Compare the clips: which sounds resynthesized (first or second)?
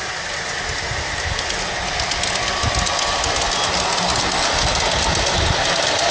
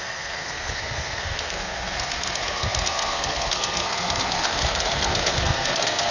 second